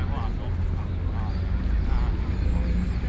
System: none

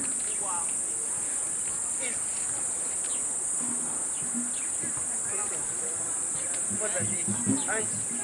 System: none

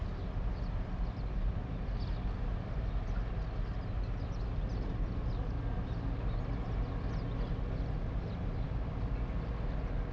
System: none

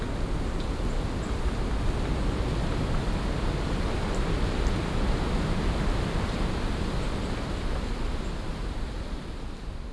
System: none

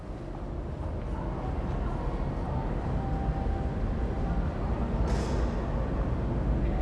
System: none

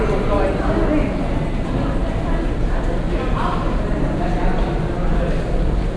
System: none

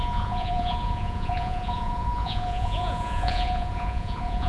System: vocoder, Vocos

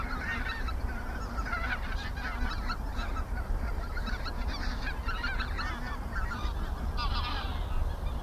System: none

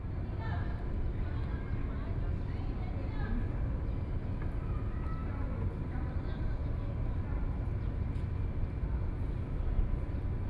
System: none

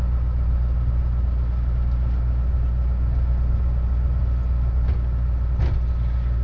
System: none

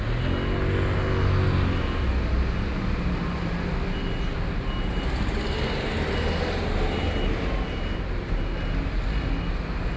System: none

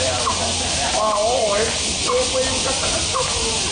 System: none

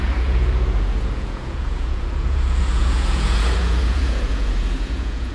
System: vocoder, Vocos